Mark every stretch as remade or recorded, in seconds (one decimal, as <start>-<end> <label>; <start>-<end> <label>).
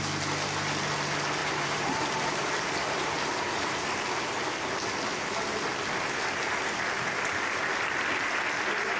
0.0-1.4 recorded; 1.4-3.8 remade; 3.8-9.0 recorded